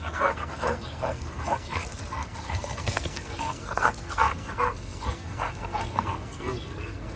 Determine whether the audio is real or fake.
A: fake